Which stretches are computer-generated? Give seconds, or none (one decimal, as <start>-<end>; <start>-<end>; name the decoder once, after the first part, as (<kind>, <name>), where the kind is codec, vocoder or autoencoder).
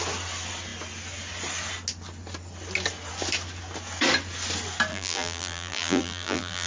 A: 4.9-6.7 (vocoder, BigVGAN v2)